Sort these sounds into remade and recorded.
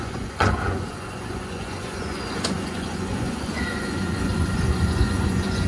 remade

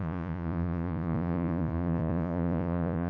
remade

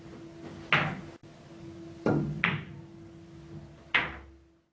recorded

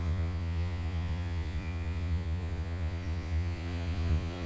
remade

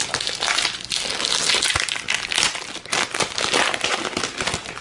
recorded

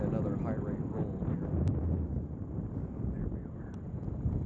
recorded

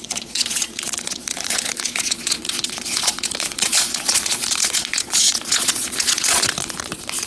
remade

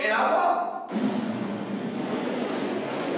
remade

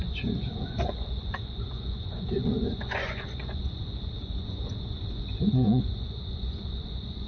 remade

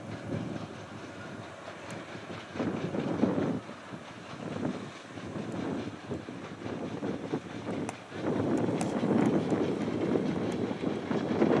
recorded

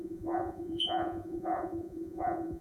remade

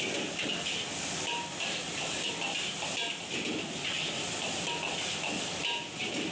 recorded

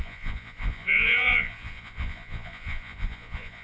remade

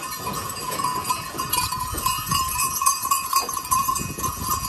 remade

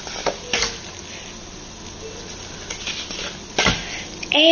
recorded